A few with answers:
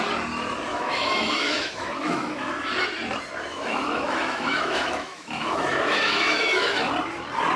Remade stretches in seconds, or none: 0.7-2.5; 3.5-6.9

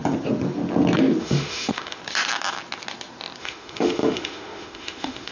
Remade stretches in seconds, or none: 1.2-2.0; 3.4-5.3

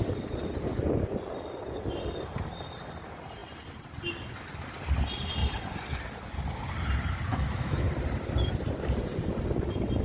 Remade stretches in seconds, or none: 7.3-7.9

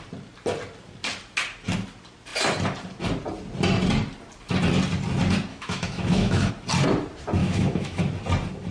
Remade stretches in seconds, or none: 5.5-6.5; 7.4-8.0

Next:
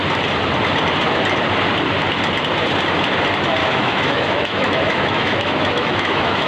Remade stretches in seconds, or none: 3.6-6.5